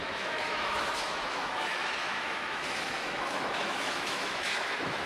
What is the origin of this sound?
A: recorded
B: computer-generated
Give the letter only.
B